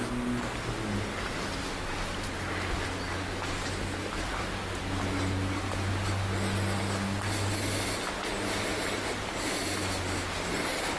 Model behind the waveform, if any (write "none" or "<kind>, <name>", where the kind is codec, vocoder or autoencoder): none